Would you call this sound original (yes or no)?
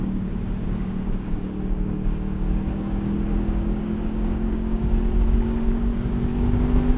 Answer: no